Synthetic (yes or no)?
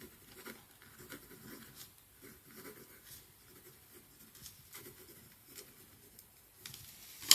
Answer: no